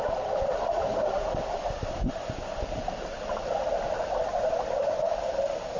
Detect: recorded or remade recorded